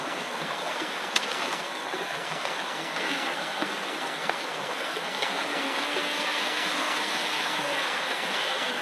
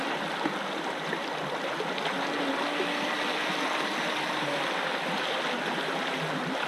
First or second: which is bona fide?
second